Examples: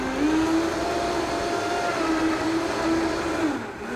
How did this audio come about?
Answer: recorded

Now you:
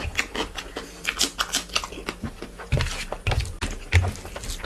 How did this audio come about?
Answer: recorded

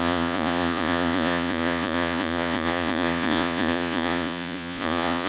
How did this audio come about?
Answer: remade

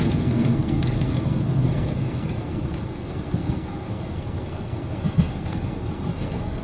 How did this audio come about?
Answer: remade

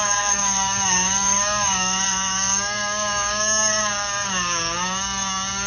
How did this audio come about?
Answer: remade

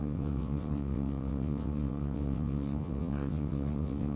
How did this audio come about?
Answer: remade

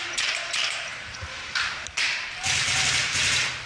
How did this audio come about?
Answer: remade